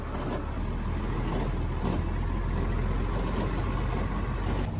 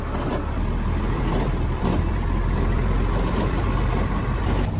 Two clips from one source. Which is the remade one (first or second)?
second